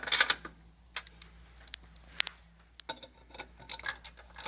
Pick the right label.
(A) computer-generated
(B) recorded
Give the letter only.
B